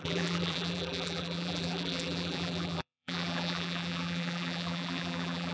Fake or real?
fake